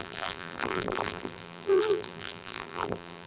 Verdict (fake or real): fake